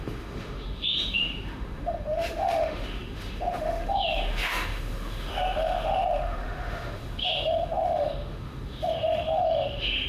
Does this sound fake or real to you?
fake